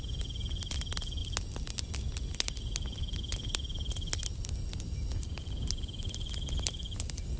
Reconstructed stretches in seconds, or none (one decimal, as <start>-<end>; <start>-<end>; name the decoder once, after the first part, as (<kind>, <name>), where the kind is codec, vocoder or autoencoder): none